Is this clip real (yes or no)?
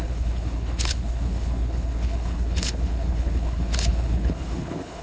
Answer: no